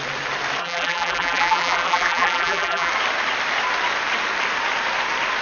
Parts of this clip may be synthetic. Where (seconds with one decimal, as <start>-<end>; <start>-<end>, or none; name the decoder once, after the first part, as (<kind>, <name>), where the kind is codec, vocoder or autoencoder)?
0.6-2.9 (vocoder, BigVGAN v2)